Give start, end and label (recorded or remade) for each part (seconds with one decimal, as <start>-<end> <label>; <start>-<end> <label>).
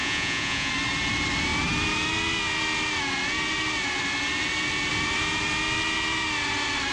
0.0-0.7 remade; 0.7-6.9 recorded